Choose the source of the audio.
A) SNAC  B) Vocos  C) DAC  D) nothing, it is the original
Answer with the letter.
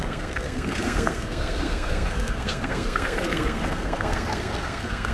A